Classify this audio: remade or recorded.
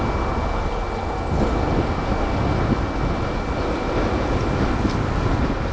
recorded